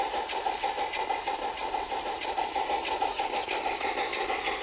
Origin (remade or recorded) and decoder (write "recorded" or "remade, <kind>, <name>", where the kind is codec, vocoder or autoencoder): recorded